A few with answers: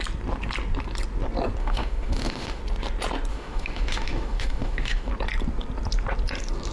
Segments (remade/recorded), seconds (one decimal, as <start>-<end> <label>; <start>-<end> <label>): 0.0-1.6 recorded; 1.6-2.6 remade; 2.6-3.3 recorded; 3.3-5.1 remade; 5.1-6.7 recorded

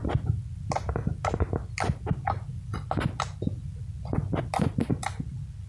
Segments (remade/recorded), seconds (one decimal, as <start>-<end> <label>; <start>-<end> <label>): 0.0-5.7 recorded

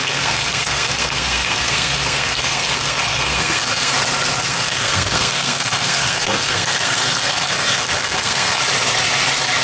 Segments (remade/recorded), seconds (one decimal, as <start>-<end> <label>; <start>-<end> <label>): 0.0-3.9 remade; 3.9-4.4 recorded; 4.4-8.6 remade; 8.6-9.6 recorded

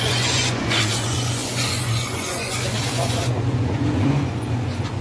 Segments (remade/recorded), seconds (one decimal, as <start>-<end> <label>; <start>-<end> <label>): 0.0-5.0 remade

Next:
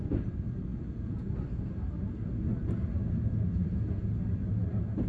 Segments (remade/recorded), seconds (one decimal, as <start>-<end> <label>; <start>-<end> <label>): 0.0-0.7 recorded; 0.7-1.3 remade; 1.3-5.1 recorded

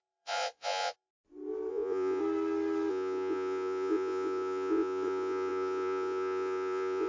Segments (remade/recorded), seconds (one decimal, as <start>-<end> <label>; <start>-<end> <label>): 0.0-1.1 remade; 1.1-1.7 recorded; 1.7-2.2 remade; 2.2-2.9 recorded; 2.9-7.1 remade